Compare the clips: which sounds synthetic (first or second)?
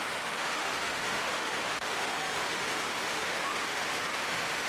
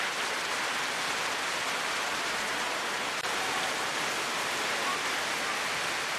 first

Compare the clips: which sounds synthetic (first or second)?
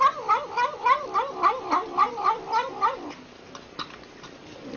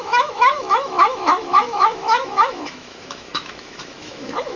second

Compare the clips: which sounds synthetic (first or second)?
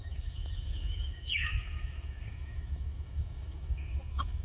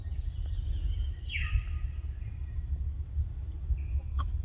first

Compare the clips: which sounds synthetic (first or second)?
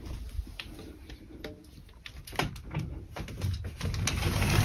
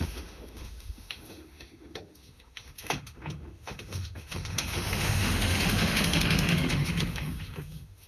second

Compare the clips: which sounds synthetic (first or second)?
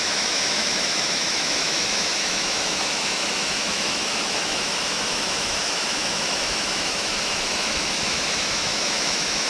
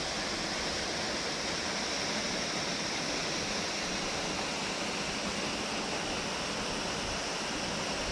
first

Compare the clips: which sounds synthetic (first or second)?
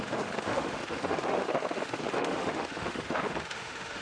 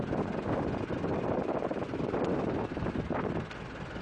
first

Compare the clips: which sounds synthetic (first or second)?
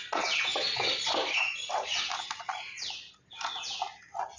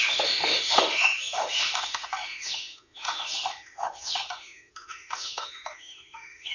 second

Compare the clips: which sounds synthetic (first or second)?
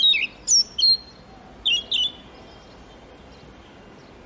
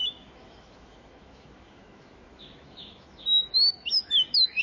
second